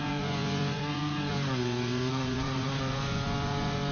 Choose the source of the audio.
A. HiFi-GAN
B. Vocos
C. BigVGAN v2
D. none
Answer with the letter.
B